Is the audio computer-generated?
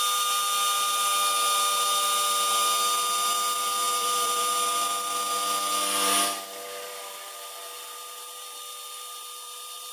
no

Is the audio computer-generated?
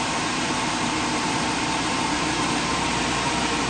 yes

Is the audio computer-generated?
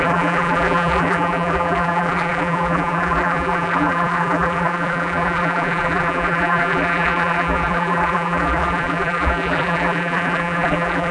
yes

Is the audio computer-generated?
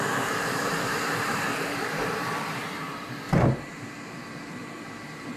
yes